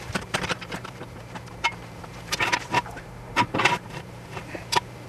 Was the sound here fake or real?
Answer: fake